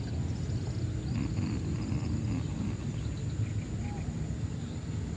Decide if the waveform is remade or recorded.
recorded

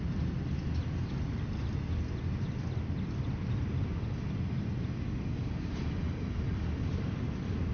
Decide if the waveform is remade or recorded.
recorded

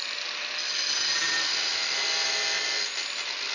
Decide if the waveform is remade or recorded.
recorded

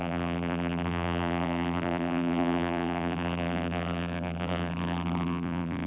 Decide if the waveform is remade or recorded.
remade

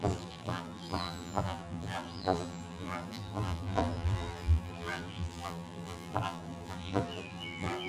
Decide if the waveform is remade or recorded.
remade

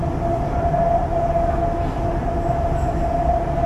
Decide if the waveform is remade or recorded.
recorded